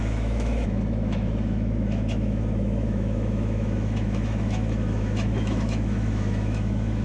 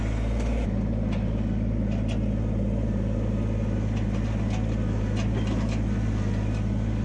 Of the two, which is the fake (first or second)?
first